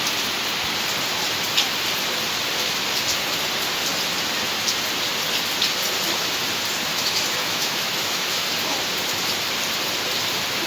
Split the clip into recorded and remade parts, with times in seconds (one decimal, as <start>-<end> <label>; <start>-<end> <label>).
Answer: 0.0-6.9 recorded; 6.9-8.5 remade; 8.5-10.7 recorded